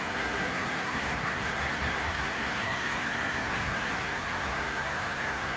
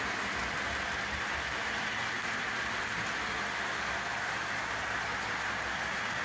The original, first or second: second